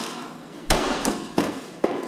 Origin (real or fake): fake